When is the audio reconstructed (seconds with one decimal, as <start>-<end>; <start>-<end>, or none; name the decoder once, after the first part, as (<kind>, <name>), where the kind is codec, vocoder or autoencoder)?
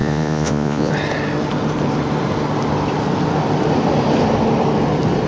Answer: 0.0-0.9 (vocoder, Vocos)